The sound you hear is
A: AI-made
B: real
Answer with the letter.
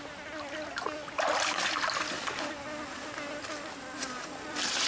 B